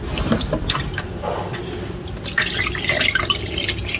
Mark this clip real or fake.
real